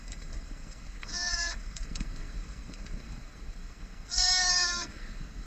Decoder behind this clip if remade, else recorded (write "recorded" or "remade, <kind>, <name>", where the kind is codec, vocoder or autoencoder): remade, codec, SNAC